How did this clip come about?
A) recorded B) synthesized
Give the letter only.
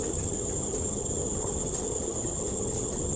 B